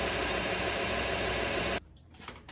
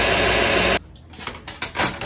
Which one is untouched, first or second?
second